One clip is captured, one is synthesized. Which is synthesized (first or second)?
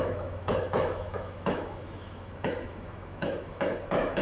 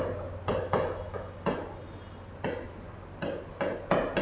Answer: first